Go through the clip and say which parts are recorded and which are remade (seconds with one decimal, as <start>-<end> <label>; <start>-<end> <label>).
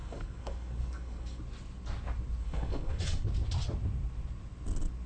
0.0-1.4 remade; 1.4-2.4 recorded; 2.4-3.0 remade; 3.0-5.1 recorded